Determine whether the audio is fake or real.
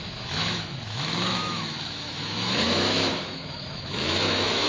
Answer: fake